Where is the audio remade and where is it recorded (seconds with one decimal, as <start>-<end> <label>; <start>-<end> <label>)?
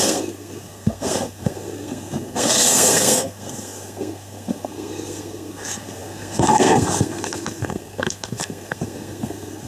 0.0-9.7 remade